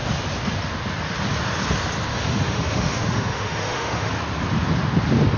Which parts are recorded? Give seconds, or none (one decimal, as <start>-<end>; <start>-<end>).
0.0-2.1; 4.1-5.4